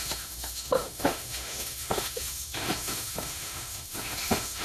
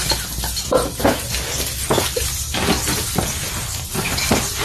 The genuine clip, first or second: second